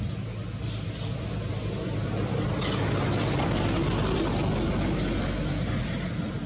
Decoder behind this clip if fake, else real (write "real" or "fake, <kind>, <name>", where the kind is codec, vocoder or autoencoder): real